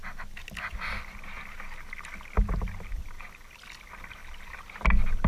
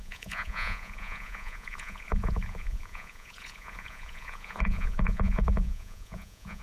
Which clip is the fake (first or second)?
second